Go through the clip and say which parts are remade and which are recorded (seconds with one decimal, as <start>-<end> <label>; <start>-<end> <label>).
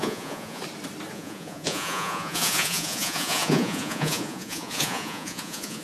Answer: 0.0-0.6 remade; 0.6-1.1 recorded; 1.1-5.8 remade